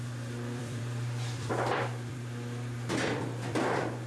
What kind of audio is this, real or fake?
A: fake